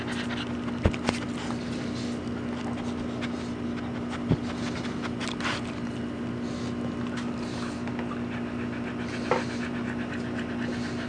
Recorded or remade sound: recorded